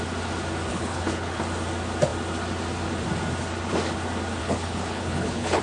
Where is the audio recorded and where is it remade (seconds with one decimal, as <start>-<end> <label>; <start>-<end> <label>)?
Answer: 0.0-0.7 recorded; 0.7-1.4 remade; 1.4-4.4 recorded; 4.4-5.6 remade